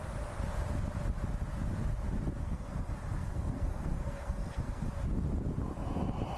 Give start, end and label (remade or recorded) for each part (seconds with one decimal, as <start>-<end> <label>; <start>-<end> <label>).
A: 0.0-2.4 recorded; 2.4-4.9 remade; 4.9-6.4 recorded